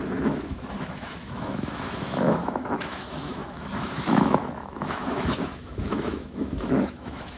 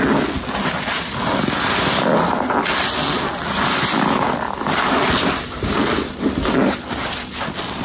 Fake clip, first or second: first